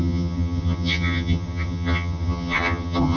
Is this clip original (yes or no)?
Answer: no